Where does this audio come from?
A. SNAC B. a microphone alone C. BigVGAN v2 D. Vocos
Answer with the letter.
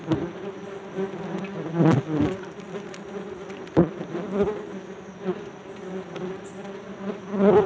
B